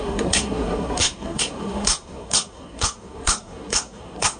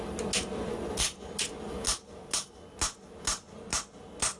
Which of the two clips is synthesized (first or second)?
first